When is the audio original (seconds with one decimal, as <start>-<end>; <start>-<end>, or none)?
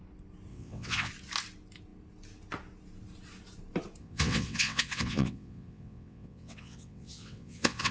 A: 0.0-0.5; 1.1-4.0